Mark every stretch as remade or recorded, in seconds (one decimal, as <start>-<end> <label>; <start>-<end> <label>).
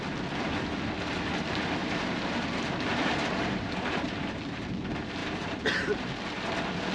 0.0-1.8 recorded; 1.8-4.4 remade; 4.4-5.2 recorded; 5.2-6.1 remade; 6.1-6.9 recorded